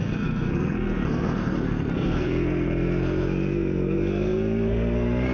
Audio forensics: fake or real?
fake